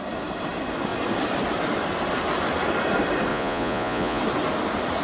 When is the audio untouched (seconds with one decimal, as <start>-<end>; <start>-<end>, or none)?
0.0-3.3; 4.2-5.0